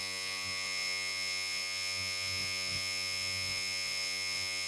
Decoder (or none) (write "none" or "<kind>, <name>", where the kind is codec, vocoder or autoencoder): vocoder, Vocos